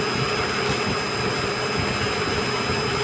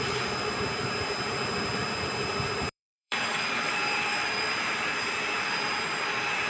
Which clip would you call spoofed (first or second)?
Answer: second